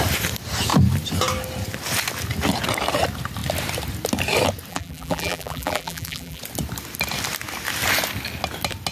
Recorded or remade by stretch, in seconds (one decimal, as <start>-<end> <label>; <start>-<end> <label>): 0.0-4.7 recorded; 4.7-6.4 remade; 6.4-8.9 recorded